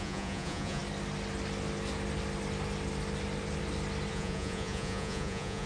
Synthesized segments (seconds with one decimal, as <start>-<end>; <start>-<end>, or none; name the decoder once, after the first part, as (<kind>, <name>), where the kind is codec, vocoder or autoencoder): 0.0-0.8 (vocoder, Vocos); 4.1-5.7